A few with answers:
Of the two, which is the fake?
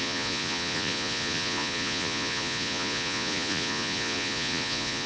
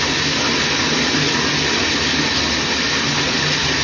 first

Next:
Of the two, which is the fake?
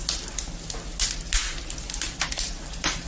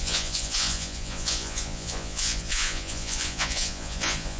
second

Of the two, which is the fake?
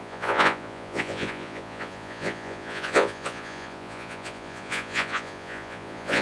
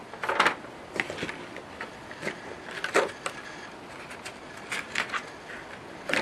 first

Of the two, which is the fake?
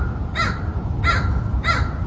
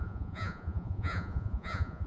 second